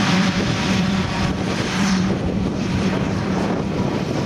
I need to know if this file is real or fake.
fake